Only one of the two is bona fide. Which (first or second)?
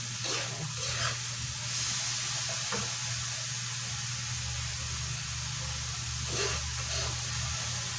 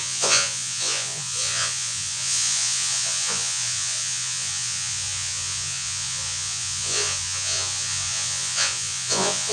first